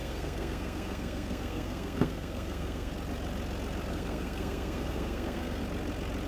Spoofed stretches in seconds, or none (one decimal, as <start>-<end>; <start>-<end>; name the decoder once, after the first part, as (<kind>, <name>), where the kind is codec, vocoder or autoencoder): 0.0-2.9 (codec, SNAC); 3.9-5.6